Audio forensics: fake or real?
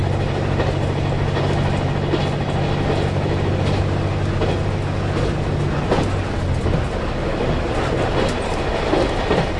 real